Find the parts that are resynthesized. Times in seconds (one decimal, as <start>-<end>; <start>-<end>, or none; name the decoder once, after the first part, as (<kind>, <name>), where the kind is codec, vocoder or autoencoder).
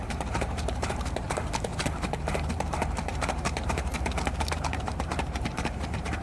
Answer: 0.0-1.7 (vocoder, BigVGAN v2); 2.5-3.9; 4.4-6.2